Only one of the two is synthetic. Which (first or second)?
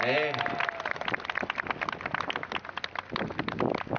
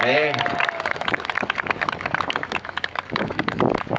second